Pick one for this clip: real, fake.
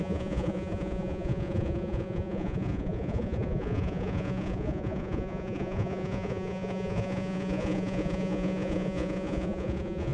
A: fake